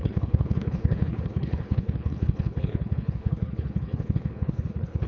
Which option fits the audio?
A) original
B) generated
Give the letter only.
B